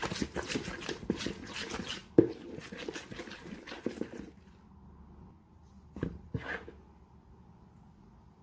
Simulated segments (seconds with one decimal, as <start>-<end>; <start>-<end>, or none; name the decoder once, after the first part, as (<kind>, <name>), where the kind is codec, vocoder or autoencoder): none